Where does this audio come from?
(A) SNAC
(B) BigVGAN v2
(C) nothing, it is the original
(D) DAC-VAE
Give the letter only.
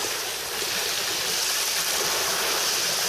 C